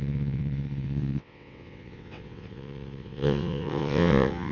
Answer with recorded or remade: remade